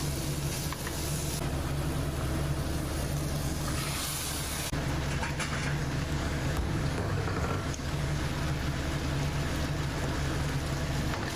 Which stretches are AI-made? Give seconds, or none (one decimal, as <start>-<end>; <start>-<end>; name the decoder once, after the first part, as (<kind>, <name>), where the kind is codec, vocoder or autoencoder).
5.8-8.3 (codec, DAC)